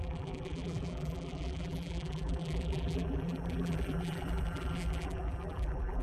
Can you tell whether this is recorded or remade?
remade